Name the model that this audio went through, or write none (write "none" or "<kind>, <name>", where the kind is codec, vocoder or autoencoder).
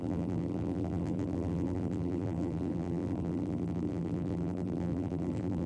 vocoder, BigVGAN v2